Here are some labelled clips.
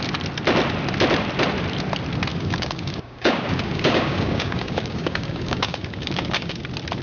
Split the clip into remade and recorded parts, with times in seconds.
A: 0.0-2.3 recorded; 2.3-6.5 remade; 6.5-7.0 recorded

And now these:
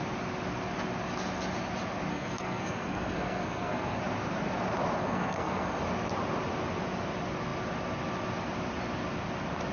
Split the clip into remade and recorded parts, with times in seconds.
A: 0.0-2.1 recorded; 2.1-4.0 remade; 4.0-5.0 recorded; 5.0-5.8 remade; 5.8-9.7 recorded

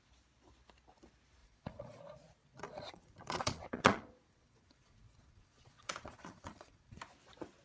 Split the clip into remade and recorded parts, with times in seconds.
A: 0.0-1.4 recorded; 1.4-2.0 remade; 2.0-2.4 recorded; 2.4-7.0 remade; 7.0-7.6 recorded

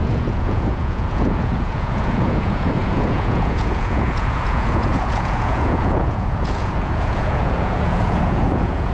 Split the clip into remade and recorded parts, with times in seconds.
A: 0.0-8.9 remade

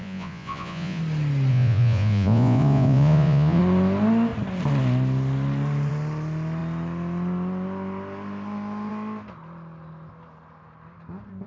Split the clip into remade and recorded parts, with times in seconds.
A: 0.0-1.0 remade; 1.0-1.5 recorded; 1.5-3.6 remade; 3.6-11.5 recorded

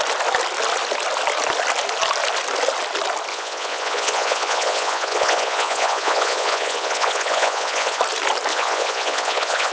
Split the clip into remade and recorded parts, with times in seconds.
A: 0.0-3.3 recorded; 3.3-8.0 remade; 8.0-8.5 recorded; 8.5-9.7 remade

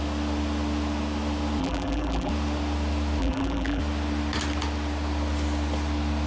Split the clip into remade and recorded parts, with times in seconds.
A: 0.0-1.6 recorded; 1.6-2.3 remade; 2.3-3.2 recorded; 3.2-3.8 remade; 3.8-6.3 recorded